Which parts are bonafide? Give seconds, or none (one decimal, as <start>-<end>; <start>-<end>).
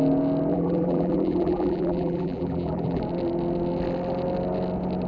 0.0-0.5; 3.0-5.1